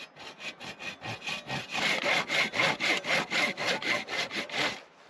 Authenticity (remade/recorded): recorded